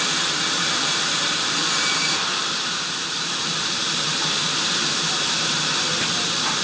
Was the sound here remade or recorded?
remade